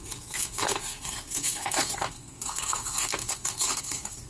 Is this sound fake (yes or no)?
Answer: yes